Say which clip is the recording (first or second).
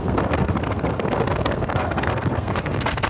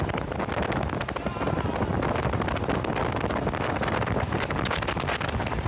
second